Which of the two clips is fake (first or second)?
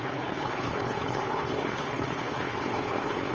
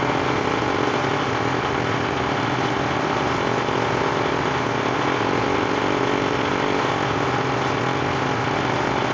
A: first